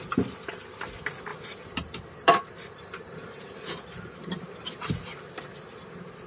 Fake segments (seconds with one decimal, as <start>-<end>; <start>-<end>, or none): 1.3-4.9; 5.5-6.3